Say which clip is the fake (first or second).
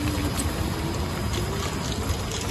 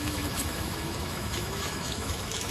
second